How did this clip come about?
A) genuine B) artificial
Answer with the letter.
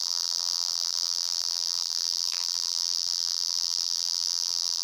B